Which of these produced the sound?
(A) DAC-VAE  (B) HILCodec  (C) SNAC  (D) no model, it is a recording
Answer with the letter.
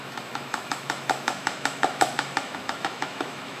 A